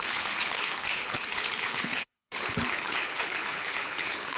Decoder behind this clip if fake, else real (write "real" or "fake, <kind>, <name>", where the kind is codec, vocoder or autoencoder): fake, codec, HILCodec